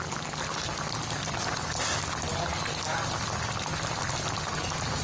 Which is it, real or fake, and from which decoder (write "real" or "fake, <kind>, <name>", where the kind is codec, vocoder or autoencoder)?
real